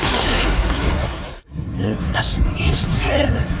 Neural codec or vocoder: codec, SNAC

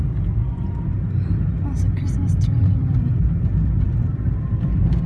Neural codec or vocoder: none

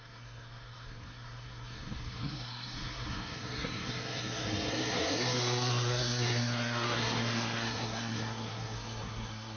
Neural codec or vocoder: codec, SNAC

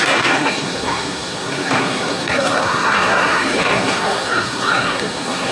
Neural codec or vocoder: codec, SNAC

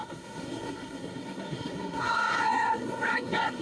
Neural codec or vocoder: codec, SNAC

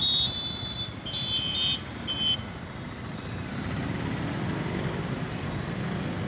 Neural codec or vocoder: none